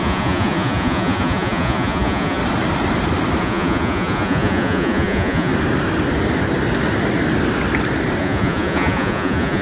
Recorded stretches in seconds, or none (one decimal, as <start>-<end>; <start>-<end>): 2.4-3.4; 5.5-8.2